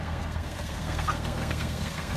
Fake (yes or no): yes